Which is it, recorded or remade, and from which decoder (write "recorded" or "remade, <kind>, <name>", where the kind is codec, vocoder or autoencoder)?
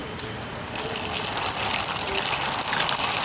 recorded